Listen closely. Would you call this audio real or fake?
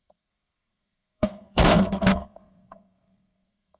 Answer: fake